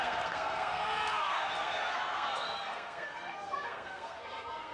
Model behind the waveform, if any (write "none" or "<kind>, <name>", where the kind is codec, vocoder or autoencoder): codec, SNAC